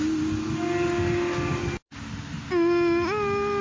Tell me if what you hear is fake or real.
real